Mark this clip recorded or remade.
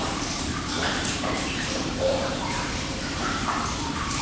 remade